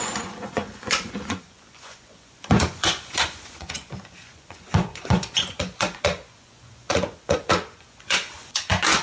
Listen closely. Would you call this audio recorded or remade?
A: remade